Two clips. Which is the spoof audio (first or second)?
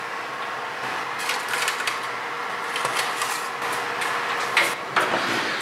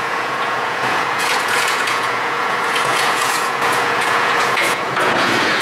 second